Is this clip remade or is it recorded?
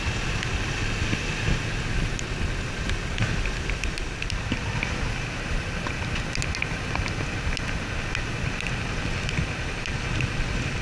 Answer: recorded